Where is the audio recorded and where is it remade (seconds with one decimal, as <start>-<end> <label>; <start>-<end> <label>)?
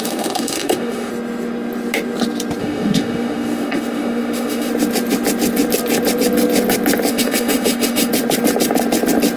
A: 0.0-1.1 remade; 1.1-2.6 recorded; 2.6-4.7 remade; 4.7-7.1 recorded; 7.1-8.1 remade; 8.1-9.4 recorded